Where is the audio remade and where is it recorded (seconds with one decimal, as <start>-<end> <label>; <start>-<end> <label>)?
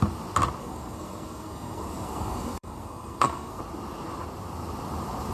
0.0-0.6 recorded; 0.6-3.6 remade; 3.6-5.3 recorded